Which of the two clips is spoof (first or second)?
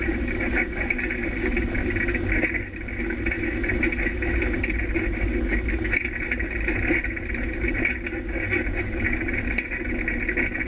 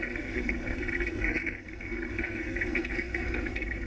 second